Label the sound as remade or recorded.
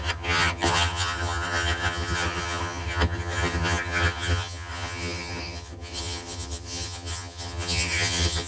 remade